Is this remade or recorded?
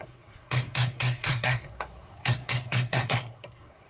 remade